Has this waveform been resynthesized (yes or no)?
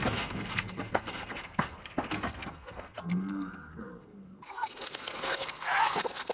yes